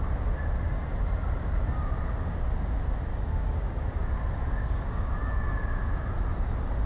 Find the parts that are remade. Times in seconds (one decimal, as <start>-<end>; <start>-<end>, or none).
3.1-3.8; 4.6-5.1